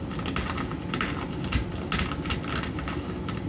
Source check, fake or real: real